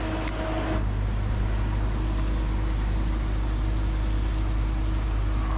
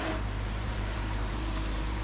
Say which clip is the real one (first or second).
first